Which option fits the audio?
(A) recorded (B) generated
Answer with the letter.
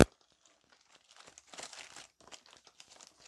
A